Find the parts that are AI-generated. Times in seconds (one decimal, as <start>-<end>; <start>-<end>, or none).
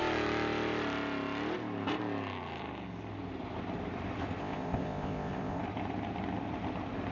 4.4-5.6